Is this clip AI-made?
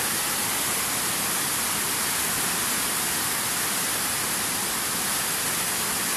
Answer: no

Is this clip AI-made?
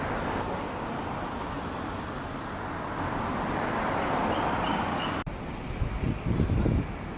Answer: no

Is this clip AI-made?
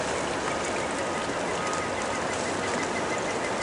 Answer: no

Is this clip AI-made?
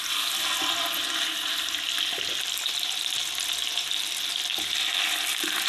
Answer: no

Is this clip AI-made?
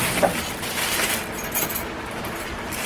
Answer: yes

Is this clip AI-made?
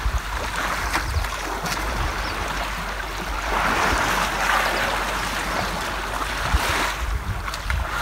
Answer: no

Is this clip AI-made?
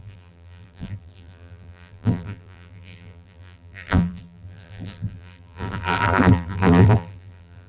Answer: yes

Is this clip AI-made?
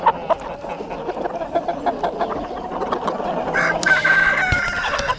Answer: no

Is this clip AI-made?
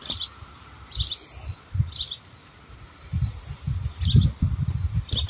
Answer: yes